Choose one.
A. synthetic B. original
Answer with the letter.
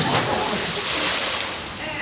B